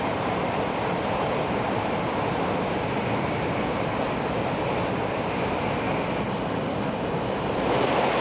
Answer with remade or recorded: recorded